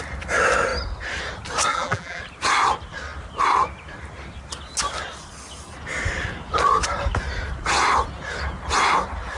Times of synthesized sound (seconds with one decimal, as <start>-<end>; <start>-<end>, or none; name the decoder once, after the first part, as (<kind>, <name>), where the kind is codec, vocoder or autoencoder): 1.7-2.2 (vocoder, BigVGAN v2)

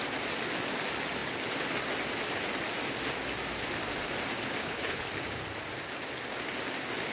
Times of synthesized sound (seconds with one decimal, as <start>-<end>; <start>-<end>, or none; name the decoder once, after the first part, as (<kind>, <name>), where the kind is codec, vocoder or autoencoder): 4.6-5.1 (codec, HILCodec)

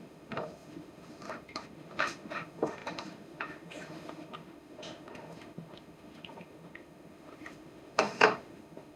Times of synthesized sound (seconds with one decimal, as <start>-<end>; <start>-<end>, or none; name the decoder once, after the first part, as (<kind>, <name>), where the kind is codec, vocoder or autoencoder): 0.0-9.0 (autoencoder, DAC-VAE)